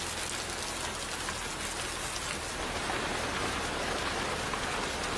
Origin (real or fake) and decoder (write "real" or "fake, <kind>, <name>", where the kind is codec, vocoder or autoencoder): real